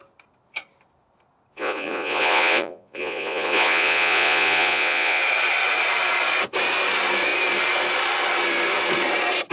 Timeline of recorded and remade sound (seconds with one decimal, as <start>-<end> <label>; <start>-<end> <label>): 0.0-1.5 recorded; 1.5-5.2 remade; 5.2-9.5 recorded